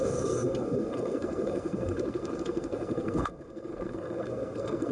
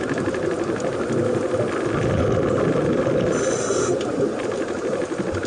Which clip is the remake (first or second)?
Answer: first